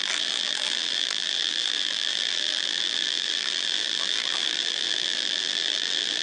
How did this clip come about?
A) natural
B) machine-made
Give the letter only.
B